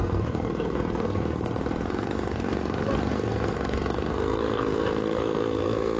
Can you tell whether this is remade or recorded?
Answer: remade